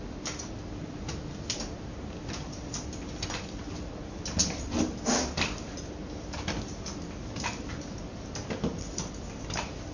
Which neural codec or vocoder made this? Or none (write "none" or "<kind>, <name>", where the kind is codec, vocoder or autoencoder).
none